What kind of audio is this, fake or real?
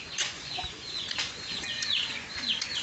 fake